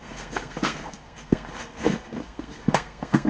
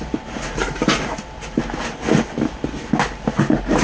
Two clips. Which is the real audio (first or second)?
second